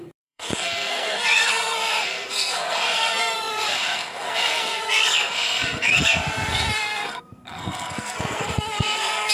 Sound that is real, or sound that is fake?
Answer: fake